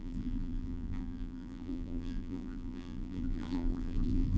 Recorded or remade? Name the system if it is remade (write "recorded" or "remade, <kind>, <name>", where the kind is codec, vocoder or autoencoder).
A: remade, vocoder, BigVGAN v2